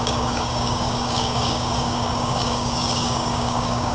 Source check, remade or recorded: remade